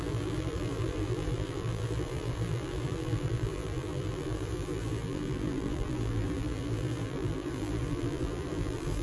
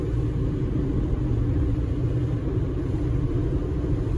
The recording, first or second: second